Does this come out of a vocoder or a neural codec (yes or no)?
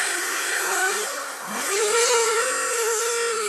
yes